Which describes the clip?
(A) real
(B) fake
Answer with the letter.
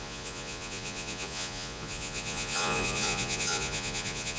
B